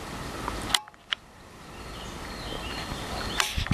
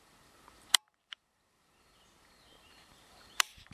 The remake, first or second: second